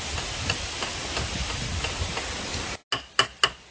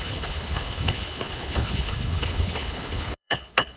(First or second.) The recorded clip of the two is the first